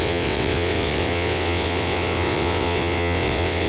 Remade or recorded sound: remade